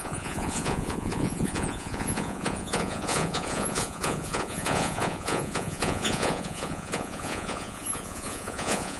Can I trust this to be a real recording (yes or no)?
no